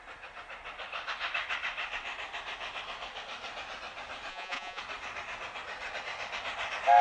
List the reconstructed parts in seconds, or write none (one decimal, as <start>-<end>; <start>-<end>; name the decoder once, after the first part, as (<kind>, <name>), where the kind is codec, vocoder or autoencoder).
4.3-4.8 (vocoder, Vocos)